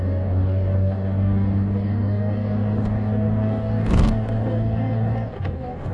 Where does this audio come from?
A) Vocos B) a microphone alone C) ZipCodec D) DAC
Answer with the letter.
D